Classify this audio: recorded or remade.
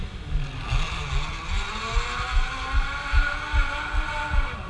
recorded